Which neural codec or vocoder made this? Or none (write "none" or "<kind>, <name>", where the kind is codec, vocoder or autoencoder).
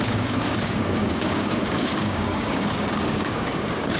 codec, DAC